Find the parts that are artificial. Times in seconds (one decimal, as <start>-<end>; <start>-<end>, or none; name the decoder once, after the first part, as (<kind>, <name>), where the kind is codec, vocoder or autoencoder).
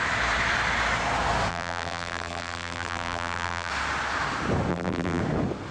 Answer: 1.5-3.7 (vocoder, BigVGAN v2); 4.7-5.2